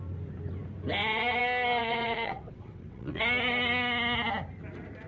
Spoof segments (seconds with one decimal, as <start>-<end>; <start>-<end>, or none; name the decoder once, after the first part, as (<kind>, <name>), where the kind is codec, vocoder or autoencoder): 1.8-3.2 (vocoder, WaveNeXt)